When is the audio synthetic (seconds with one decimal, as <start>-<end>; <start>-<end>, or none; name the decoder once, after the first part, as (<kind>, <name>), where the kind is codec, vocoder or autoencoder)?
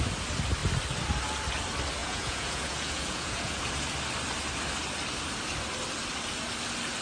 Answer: 2.0-3.6 (vocoder, Vocos)